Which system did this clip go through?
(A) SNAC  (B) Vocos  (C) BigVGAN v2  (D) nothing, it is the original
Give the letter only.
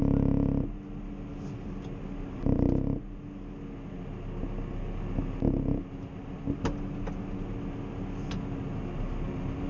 D